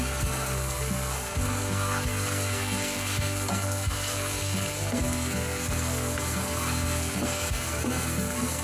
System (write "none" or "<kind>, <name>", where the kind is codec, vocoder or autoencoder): codec, SNAC